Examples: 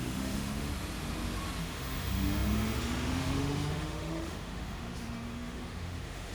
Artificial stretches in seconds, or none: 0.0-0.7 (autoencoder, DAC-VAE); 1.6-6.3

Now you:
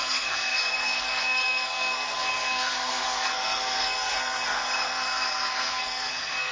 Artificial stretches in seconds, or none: 0.0-6.5 (codec, SNAC)

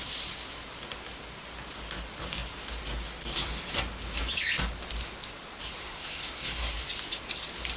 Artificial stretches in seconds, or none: 5.8-6.9 (codec, SNAC)